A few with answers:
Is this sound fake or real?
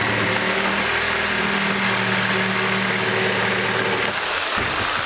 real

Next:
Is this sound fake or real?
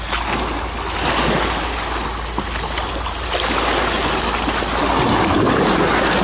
real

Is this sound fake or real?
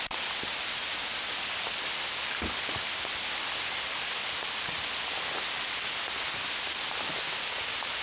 real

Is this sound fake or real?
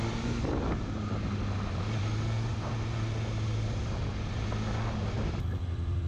real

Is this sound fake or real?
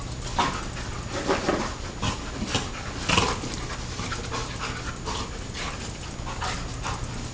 real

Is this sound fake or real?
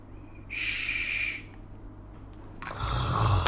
real